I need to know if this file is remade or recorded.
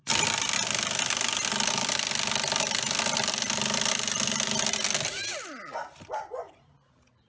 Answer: recorded